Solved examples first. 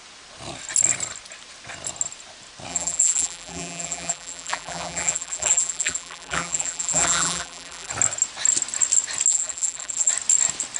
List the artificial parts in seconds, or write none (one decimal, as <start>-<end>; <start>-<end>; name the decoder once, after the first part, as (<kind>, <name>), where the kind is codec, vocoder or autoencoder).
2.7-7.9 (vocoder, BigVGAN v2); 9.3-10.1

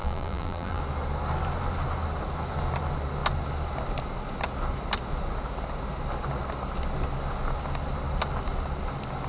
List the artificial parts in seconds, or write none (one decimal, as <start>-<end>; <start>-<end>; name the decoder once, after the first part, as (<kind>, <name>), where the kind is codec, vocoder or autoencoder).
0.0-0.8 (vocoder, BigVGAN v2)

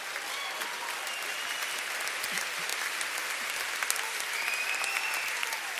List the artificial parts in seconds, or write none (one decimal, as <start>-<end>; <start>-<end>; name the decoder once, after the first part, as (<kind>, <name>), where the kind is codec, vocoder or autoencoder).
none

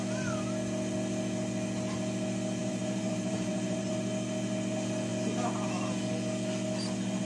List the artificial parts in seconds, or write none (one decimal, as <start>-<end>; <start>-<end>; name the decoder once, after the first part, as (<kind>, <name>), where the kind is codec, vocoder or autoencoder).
2.6-3.9 (vocoder, BigVGAN v2)

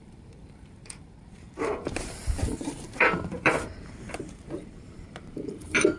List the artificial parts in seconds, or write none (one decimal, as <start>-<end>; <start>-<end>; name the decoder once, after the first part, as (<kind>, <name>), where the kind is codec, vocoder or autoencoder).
0.0-6.0 (vocoder, BigVGAN v2)